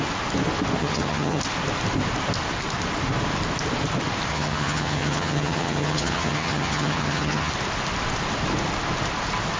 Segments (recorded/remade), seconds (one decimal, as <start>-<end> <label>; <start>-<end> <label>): 0.0-0.8 recorded; 0.8-1.4 remade; 1.4-4.3 recorded; 4.3-7.5 remade; 7.5-9.6 recorded